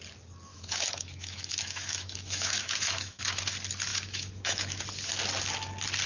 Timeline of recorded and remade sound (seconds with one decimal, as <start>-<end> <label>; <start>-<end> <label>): 0.0-0.5 recorded; 0.5-3.4 remade; 3.4-3.9 recorded; 3.9-4.8 remade; 4.8-6.1 recorded

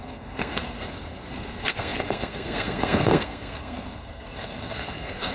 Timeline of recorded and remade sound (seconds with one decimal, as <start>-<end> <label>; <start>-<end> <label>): 0.0-5.3 remade

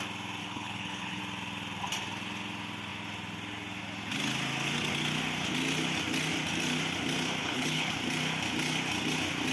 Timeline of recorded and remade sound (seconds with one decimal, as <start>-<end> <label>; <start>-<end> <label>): 0.0-0.4 recorded; 0.4-1.2 remade; 1.2-7.4 recorded; 7.4-7.9 remade; 7.9-9.5 recorded

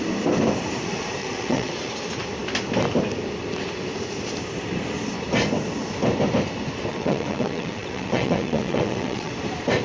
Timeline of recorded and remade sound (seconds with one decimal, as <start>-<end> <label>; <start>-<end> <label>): 0.0-1.2 recorded; 1.2-1.9 remade; 1.9-6.9 recorded; 6.9-9.3 remade; 9.3-9.8 recorded

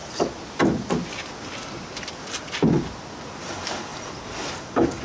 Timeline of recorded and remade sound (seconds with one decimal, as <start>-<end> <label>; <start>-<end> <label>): 0.0-5.0 recorded

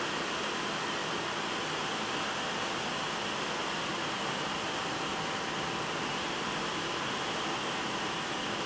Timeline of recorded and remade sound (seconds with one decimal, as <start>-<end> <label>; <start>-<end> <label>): 0.0-8.7 recorded

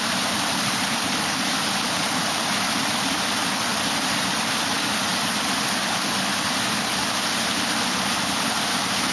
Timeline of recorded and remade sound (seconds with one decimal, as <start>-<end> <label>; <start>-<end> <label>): 0.0-9.1 recorded